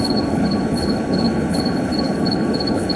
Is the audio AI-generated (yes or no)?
yes